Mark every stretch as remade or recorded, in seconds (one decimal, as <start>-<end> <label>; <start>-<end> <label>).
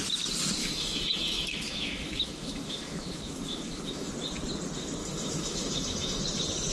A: 0.0-0.6 recorded; 0.6-4.1 remade; 4.1-5.0 recorded; 5.0-6.2 remade; 6.2-6.7 recorded